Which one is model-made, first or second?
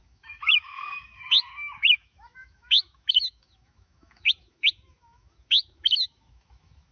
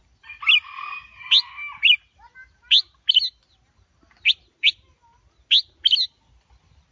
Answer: first